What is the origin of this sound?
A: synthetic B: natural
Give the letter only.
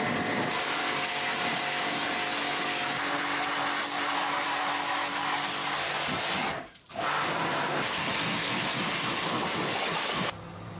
B